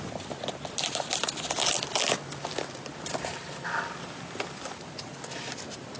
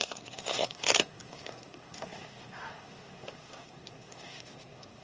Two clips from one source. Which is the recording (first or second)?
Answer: first